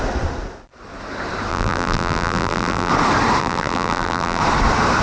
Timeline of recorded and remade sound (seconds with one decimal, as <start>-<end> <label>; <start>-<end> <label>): 0.0-1.5 recorded; 1.5-2.9 remade; 2.9-3.4 recorded; 3.4-4.4 remade; 4.4-5.0 recorded